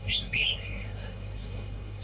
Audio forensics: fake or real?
fake